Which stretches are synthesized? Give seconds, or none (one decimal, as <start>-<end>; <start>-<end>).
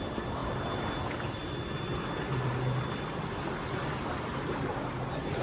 0.4-0.9